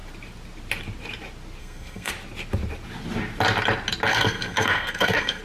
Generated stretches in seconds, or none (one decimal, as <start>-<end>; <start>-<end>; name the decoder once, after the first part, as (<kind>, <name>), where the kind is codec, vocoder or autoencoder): 1.6-2.1 (codec, SNAC); 4.1-5.4